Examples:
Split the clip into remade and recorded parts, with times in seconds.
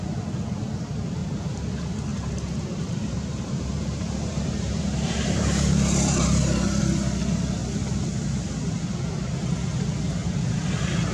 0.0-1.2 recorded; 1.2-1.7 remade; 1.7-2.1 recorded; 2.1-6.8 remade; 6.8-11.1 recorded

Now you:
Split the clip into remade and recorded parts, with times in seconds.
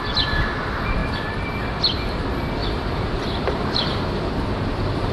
0.0-2.6 recorded; 2.6-4.2 remade; 4.2-5.1 recorded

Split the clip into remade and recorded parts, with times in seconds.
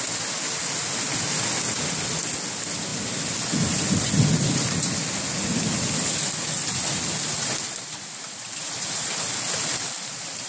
0.0-10.5 recorded